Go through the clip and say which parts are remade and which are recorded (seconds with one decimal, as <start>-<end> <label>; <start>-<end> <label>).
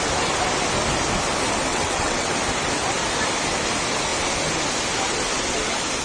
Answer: 0.0-1.7 recorded; 1.7-2.3 remade; 2.3-6.0 recorded